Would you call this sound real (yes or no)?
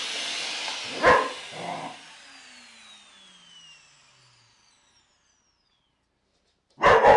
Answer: yes